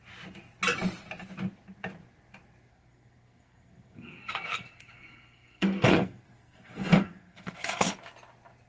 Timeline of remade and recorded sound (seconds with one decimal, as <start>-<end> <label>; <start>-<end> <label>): 0.0-2.7 recorded; 2.7-7.9 remade; 7.9-8.7 recorded